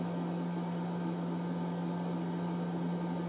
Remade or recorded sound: recorded